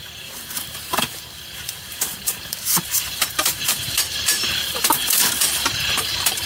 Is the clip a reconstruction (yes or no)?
yes